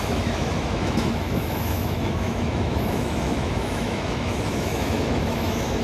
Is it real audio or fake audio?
fake